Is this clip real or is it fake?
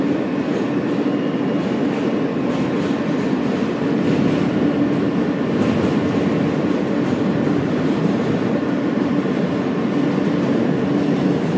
real